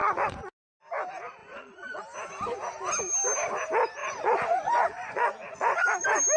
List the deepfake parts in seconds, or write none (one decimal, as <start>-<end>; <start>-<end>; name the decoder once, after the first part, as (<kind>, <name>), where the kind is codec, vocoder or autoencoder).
0.0-0.8 (vocoder, Vocos); 1.4-2.0; 4.0-5.9